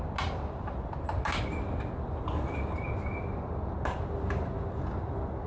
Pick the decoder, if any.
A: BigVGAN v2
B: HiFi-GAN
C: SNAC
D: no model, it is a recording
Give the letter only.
D